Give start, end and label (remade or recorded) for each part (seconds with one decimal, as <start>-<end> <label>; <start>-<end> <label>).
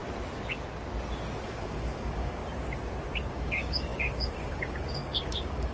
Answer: 0.0-1.5 recorded; 1.5-2.4 remade; 2.4-3.3 recorded; 3.3-5.7 remade